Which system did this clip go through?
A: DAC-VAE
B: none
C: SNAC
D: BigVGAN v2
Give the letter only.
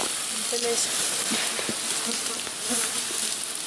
B